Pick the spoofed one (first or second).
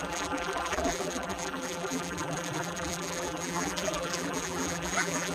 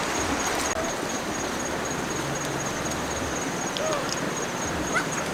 first